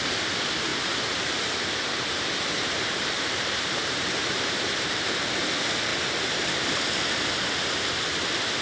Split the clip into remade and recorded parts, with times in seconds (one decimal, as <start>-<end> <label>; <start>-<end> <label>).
0.0-0.7 recorded; 0.7-5.1 remade; 5.1-5.9 recorded; 5.9-6.6 remade; 6.6-8.6 recorded